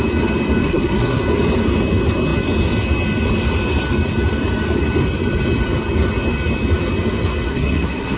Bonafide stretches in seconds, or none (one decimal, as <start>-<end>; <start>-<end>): 0.0-0.6; 1.2-7.5